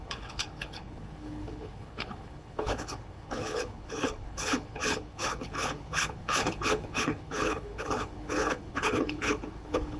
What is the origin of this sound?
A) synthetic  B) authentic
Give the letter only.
A